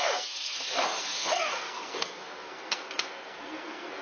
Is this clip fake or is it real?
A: fake